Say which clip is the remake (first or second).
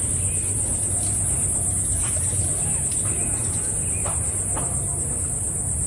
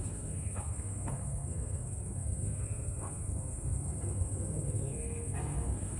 second